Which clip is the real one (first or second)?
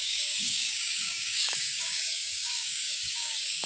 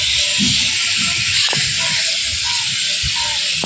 second